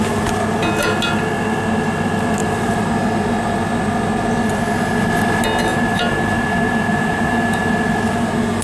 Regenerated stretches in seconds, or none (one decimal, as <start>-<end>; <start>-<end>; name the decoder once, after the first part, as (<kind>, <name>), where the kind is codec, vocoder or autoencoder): 2.4-2.9 (vocoder, BigVGAN v2); 5.7-7.7